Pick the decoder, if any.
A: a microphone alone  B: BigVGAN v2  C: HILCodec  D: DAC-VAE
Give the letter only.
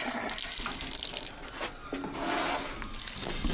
A